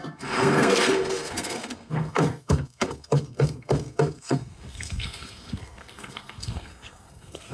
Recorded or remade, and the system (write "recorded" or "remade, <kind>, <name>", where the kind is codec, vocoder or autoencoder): remade, codec, SNAC